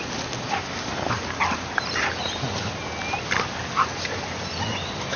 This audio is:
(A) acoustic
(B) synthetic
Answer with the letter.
A